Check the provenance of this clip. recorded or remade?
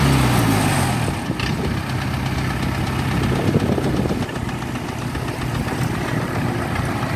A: recorded